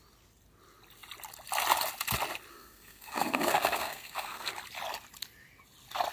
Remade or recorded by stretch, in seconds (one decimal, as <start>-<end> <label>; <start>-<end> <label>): 0.0-2.5 recorded; 2.5-4.5 remade; 4.5-6.1 recorded